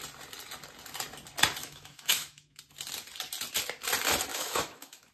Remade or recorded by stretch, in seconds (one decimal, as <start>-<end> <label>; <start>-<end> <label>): 0.0-1.6 recorded; 1.6-2.6 remade; 2.6-4.3 recorded; 4.3-5.1 remade